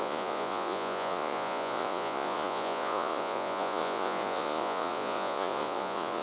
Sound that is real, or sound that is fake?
fake